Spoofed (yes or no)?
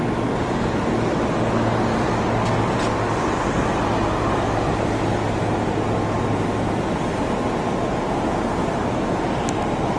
no